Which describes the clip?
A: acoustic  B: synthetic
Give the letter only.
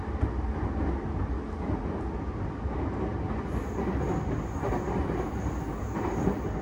A